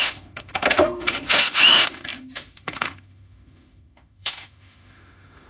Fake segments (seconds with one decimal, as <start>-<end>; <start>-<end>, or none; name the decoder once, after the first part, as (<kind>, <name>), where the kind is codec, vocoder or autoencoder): 0.0-5.5 (autoencoder, DAC-VAE)